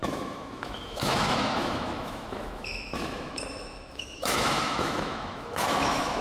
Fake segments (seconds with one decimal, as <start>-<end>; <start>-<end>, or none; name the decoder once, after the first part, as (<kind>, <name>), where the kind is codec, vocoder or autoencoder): 0.0-6.2 (autoencoder, DAC-VAE)